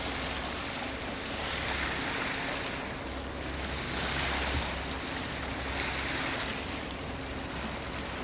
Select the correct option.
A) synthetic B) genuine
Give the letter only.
B